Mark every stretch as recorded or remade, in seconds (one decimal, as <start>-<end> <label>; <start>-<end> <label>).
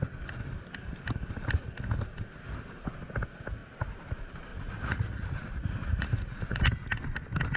0.0-4.5 recorded; 4.5-6.6 remade; 6.6-7.6 recorded